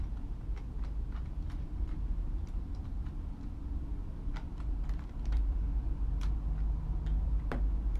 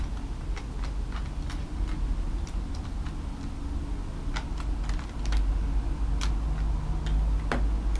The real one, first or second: second